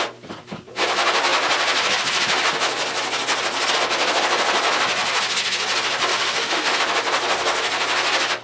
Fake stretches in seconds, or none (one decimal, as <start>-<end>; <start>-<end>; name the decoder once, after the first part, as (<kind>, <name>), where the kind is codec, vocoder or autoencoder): 6.1-6.8 (autoencoder, DAC-VAE)